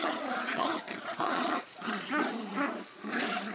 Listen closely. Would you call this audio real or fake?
fake